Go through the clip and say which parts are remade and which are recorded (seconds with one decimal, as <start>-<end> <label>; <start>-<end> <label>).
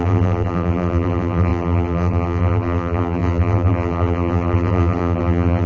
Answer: 0.0-5.7 remade